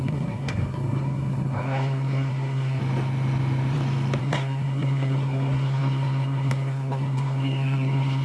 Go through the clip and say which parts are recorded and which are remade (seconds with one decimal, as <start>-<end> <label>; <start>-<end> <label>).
0.0-2.8 remade; 2.8-4.2 recorded; 4.2-8.2 remade